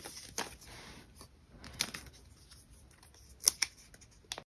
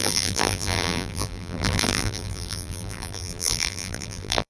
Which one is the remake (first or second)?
second